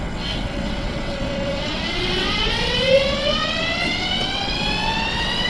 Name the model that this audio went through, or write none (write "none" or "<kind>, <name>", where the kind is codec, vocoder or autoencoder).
vocoder, WaveNeXt